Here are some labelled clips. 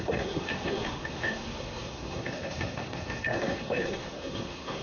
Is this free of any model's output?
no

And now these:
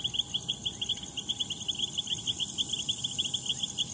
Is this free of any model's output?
no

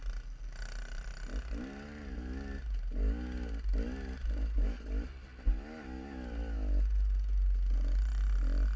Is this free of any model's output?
yes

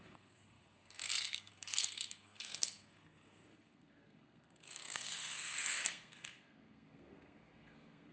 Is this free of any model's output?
no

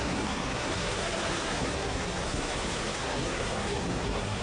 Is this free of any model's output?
no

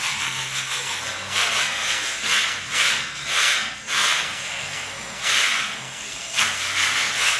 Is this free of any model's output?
no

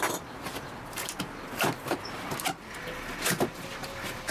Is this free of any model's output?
yes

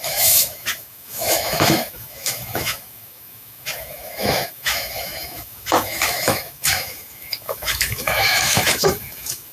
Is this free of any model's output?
no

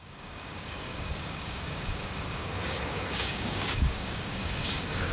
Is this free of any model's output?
no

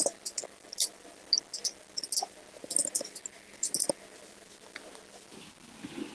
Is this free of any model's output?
yes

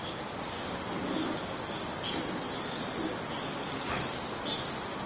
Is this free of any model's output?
yes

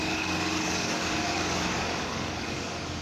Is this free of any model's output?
no